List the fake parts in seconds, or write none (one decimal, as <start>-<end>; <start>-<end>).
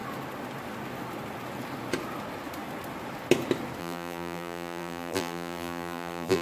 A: 3.8-6.4